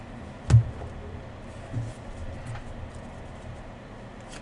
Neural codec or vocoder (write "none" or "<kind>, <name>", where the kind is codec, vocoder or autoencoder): none